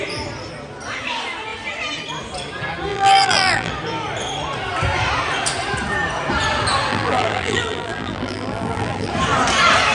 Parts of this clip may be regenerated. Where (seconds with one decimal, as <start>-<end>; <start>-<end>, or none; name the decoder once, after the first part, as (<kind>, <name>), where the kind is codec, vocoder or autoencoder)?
2.9-3.7 (vocoder, BigVGAN v2); 6.9-9.1